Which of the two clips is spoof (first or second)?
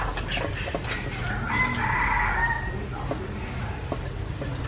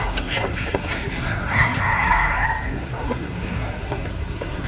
second